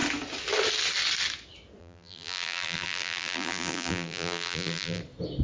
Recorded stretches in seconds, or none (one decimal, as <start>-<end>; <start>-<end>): 0.0-1.8; 5.0-5.4